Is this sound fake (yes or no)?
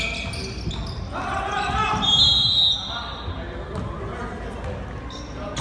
no